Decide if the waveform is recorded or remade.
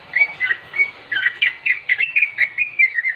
remade